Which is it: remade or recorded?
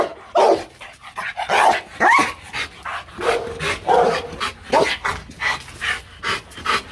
recorded